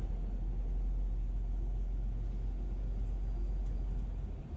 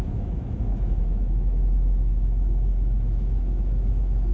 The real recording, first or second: first